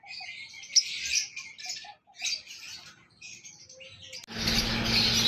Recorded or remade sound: recorded